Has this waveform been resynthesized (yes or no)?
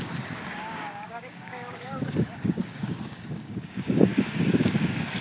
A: yes